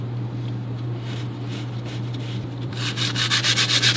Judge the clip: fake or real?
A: fake